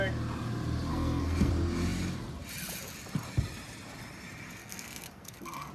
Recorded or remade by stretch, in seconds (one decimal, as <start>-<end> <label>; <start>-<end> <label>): 0.0-0.9 recorded; 0.9-1.5 remade; 1.5-4.6 recorded; 4.6-5.7 remade